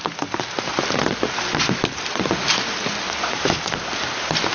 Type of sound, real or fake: real